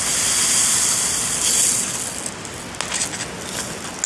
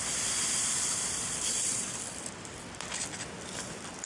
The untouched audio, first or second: first